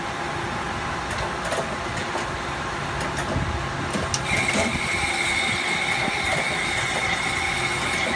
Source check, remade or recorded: recorded